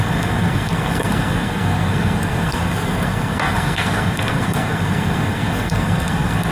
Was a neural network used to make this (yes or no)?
yes